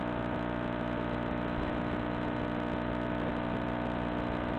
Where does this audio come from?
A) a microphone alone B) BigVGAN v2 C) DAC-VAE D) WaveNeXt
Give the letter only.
A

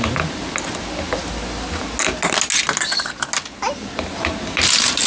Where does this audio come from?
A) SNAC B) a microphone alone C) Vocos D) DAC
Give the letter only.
B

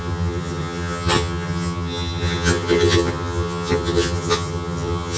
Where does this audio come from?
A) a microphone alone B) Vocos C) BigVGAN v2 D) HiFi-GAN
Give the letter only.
D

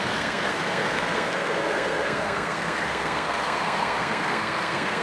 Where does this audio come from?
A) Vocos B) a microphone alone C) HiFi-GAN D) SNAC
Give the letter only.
D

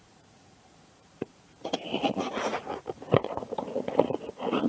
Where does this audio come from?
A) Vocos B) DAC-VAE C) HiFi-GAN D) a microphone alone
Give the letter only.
A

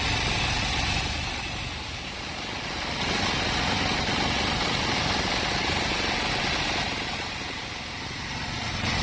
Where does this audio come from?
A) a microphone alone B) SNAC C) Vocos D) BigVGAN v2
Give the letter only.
A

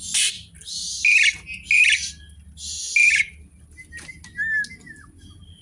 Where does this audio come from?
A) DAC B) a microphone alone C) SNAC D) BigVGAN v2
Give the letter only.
B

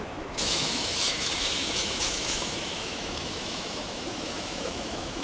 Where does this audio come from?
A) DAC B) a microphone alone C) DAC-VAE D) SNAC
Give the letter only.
C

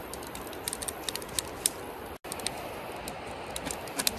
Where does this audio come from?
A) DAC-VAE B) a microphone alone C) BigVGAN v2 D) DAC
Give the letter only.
B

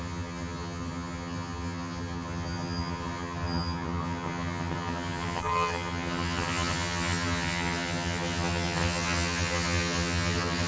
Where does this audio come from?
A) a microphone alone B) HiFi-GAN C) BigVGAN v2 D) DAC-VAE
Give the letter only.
B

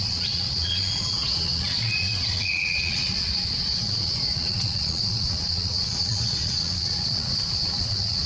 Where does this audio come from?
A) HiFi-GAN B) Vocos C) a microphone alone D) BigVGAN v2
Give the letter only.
B